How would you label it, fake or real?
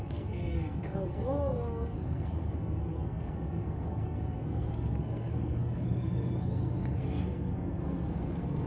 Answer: fake